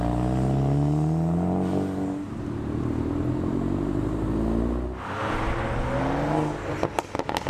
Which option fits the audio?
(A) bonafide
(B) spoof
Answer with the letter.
A